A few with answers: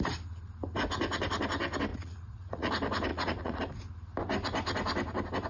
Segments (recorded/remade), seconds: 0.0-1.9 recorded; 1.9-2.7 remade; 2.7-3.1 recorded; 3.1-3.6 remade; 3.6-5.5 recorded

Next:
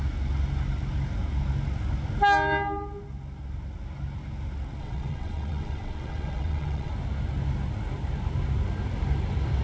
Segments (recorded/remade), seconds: 0.0-4.8 recorded; 4.8-6.9 remade; 6.9-9.6 recorded

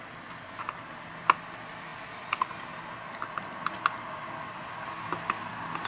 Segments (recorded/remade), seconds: 0.0-5.9 recorded

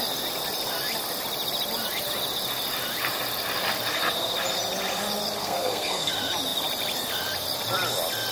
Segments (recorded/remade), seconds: 0.0-5.4 recorded; 5.4-6.1 remade; 6.1-8.3 recorded

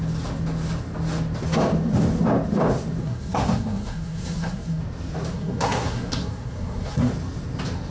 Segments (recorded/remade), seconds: 0.0-3.0 recorded; 3.0-4.8 remade; 4.8-5.3 recorded; 5.3-7.1 remade; 7.1-7.9 recorded

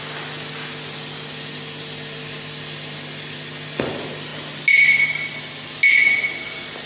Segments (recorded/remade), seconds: 0.0-6.9 recorded

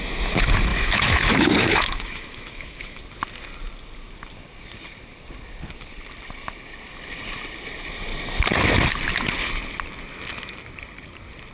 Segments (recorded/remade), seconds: 0.0-0.7 recorded; 0.7-3.0 remade; 3.0-11.5 recorded

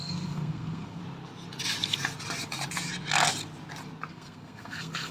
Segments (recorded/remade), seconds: 0.0-1.0 remade; 1.0-4.1 recorded; 4.1-5.1 remade